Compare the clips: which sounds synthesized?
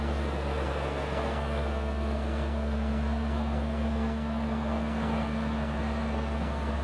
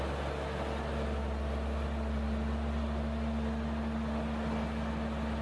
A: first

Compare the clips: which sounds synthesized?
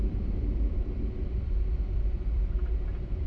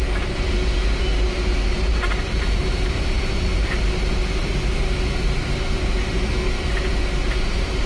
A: first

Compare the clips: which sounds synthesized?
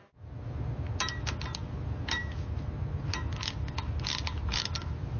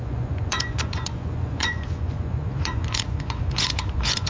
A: second